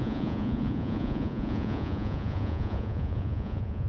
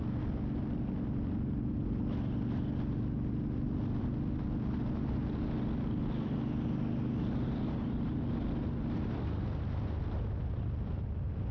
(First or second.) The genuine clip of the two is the second